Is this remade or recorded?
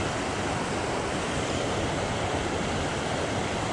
recorded